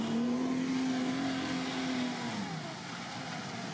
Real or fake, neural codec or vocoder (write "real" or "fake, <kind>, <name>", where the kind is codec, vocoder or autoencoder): real